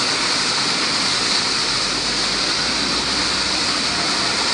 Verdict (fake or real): real